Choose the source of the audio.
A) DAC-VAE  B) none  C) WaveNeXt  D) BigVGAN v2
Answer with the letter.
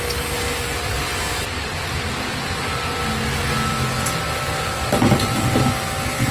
B